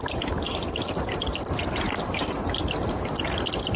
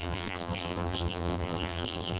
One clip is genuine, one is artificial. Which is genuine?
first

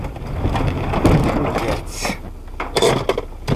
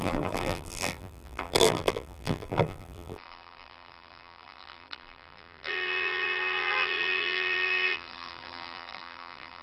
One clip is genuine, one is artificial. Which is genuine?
first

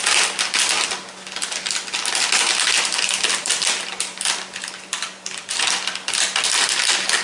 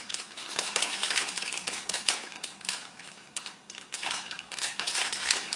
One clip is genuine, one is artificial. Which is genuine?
first